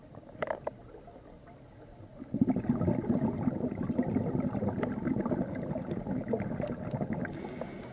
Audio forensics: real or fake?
real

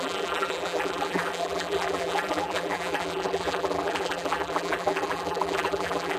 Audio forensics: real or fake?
fake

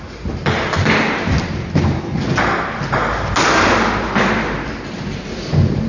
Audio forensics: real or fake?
real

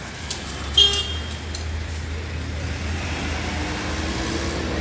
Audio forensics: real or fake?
real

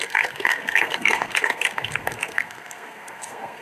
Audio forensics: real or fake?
fake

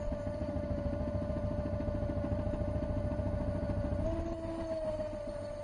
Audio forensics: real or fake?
real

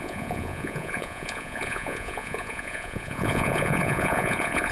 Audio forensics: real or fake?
fake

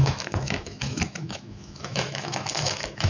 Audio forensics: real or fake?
fake